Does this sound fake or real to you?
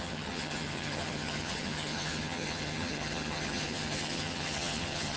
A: fake